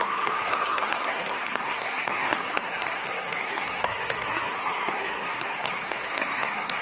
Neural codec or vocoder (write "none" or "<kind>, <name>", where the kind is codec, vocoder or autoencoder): codec, SNAC